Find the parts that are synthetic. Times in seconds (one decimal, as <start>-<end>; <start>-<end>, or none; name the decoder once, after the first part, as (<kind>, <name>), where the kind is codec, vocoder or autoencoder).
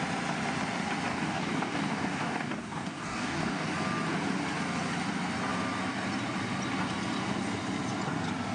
1.1-3.7 (codec, DAC)